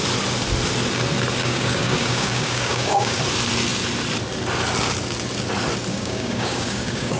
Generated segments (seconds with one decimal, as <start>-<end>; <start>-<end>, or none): 1.4-3.2; 5.9-7.2